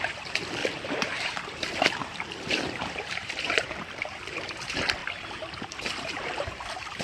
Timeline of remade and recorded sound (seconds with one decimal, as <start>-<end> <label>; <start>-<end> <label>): 0.0-0.6 recorded; 0.6-4.6 remade; 4.6-5.0 recorded; 5.0-7.0 remade

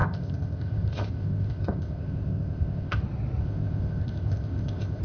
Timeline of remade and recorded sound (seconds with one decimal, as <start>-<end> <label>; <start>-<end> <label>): 0.0-3.0 remade; 3.0-3.4 recorded; 3.4-5.0 remade

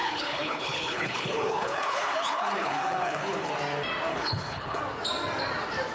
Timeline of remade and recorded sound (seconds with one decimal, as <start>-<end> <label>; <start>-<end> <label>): 0.0-3.5 remade; 3.5-4.1 recorded; 4.1-4.8 remade; 4.8-5.9 recorded

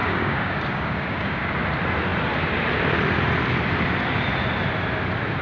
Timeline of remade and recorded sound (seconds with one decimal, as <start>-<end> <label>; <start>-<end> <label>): 0.0-1.5 remade; 1.5-5.4 recorded

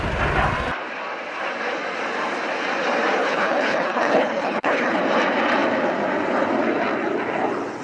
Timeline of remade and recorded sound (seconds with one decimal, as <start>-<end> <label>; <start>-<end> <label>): 0.0-3.2 recorded; 3.2-5.0 remade; 5.0-7.8 recorded

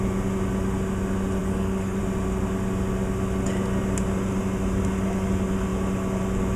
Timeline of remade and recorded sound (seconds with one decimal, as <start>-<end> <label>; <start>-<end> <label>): 0.0-1.4 recorded; 1.4-2.0 remade; 2.0-6.6 recorded